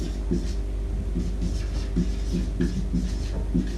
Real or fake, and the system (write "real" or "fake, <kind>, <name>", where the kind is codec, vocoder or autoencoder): real